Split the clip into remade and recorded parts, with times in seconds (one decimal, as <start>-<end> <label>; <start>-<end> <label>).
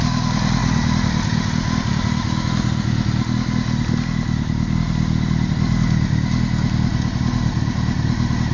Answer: 0.0-0.6 recorded; 0.6-1.9 remade; 1.9-8.5 recorded